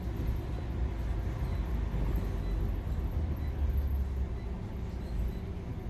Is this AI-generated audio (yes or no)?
no